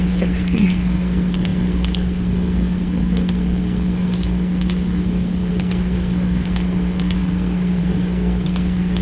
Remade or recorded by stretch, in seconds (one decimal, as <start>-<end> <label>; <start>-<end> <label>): 0.0-9.0 remade